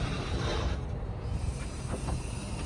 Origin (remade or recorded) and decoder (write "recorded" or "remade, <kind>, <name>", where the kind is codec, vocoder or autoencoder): remade, vocoder, BigVGAN v2